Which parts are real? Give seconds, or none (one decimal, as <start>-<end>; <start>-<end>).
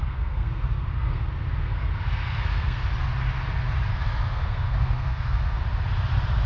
2.9-3.9; 5.6-6.5